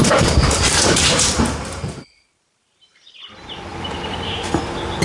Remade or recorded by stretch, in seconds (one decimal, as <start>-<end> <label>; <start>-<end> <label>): 0.0-3.0 remade; 3.0-3.7 recorded; 3.7-4.5 remade; 4.5-5.0 recorded